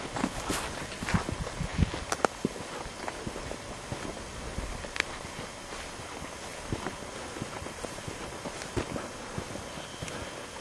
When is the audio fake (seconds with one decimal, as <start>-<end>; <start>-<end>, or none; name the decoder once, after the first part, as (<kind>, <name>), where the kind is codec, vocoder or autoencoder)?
none